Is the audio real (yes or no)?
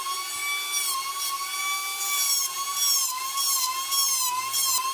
yes